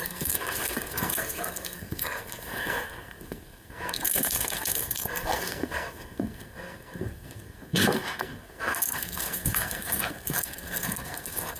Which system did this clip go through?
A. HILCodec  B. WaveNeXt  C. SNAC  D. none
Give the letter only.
C